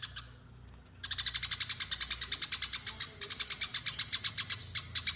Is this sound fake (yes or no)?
no